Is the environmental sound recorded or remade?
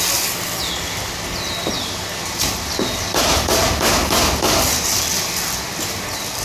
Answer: recorded